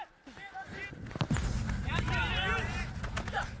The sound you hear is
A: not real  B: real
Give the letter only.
B